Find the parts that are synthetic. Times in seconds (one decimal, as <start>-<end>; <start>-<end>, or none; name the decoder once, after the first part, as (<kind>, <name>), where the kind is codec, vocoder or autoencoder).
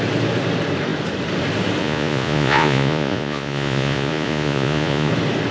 1.8-5.1 (vocoder, Vocos)